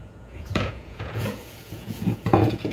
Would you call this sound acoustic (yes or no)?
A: no